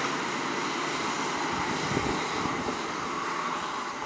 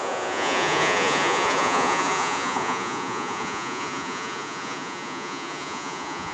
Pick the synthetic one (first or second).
second